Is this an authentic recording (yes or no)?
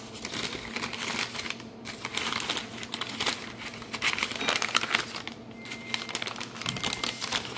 yes